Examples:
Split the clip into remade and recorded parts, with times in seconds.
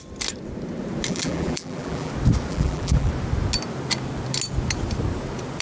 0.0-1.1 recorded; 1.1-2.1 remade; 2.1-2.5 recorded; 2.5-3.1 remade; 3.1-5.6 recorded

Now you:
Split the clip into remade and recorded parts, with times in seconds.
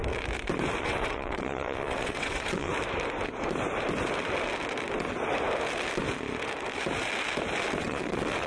0.0-0.8 recorded; 0.8-2.7 remade; 2.7-7.8 recorded; 7.8-8.5 remade